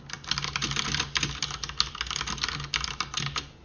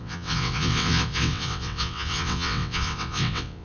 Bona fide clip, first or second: first